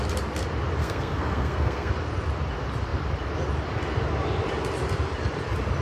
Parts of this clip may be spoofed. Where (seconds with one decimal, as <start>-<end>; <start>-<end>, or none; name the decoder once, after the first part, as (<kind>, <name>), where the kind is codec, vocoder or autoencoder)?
0.8-1.9 (codec, SNAC)